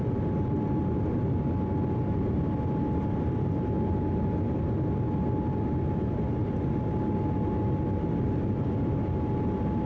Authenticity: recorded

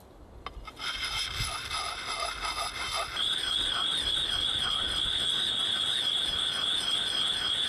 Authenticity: recorded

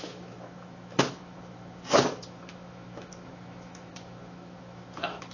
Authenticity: remade